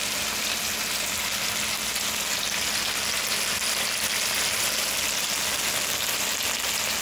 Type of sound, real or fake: real